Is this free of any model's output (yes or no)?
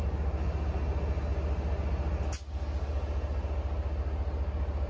yes